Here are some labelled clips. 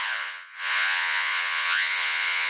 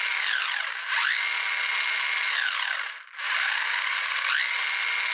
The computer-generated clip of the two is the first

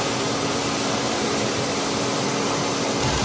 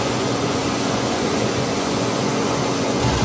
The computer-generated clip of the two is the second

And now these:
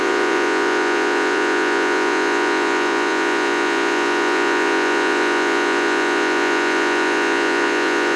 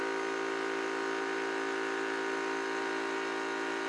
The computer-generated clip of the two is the first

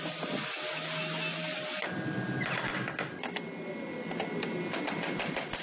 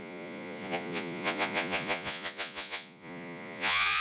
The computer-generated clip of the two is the second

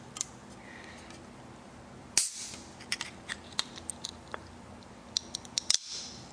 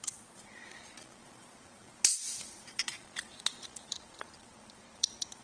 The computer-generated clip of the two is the second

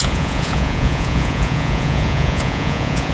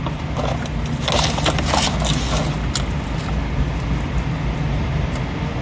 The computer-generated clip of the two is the first